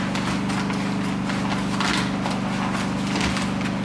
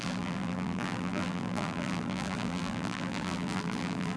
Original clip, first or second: first